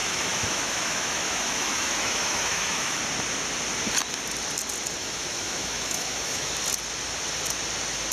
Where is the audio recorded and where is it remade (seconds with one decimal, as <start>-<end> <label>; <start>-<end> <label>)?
0.0-3.0 remade; 3.0-5.0 recorded; 5.0-6.5 remade; 6.5-8.1 recorded